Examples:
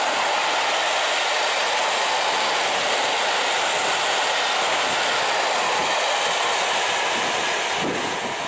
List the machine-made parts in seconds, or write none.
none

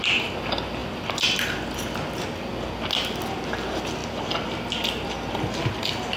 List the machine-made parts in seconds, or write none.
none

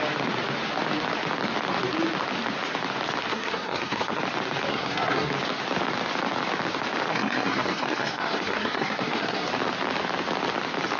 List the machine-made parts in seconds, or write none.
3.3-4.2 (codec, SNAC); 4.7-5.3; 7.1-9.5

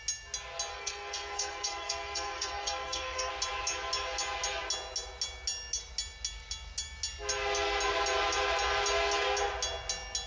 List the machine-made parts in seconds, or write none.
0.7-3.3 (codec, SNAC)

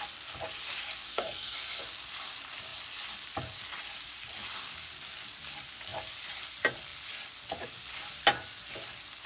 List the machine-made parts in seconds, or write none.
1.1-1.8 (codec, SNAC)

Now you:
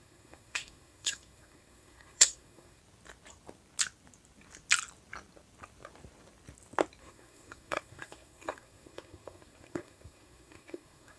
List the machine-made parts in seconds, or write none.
0.0-2.8 (codec, SNAC); 7.0-11.2